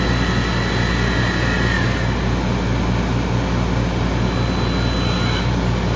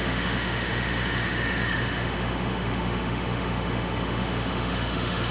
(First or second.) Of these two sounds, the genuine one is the first